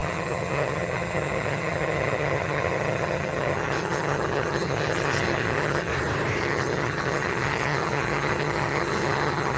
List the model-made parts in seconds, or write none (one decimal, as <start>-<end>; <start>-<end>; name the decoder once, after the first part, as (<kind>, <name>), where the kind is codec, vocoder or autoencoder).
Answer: 0.0-5.9 (vocoder, HiFi-GAN); 6.4-9.6